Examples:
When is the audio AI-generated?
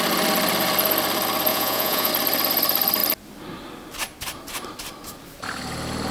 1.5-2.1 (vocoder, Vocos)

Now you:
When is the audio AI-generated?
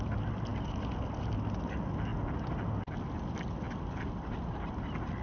none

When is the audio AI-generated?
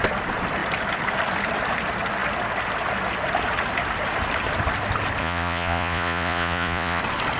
5.2-7.0 (vocoder, Vocos)